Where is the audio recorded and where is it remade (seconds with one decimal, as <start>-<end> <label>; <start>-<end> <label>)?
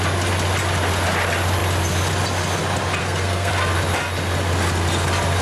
0.0-3.0 recorded; 3.0-3.5 remade; 3.5-5.4 recorded